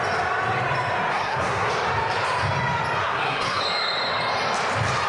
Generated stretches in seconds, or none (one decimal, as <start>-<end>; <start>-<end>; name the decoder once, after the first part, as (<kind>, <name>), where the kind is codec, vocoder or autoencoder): 1.1-1.7 (codec, SNAC); 3.0-3.6